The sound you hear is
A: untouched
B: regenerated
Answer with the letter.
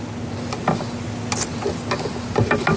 A